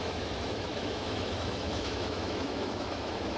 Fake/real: fake